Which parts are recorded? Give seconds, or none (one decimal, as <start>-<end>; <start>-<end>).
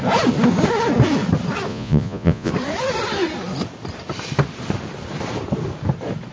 0.0-1.7; 2.5-6.3